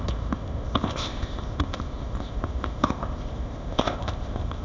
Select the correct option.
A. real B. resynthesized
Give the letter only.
B